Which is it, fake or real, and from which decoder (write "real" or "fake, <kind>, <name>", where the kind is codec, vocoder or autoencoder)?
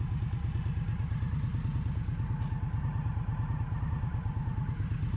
real